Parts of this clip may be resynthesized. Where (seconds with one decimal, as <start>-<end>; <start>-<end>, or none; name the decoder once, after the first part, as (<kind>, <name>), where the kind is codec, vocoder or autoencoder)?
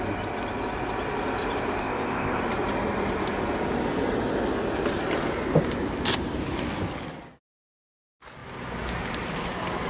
1.8-2.4 (codec, ZipCodec)